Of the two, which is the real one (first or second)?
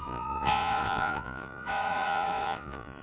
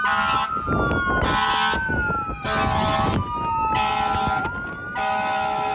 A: second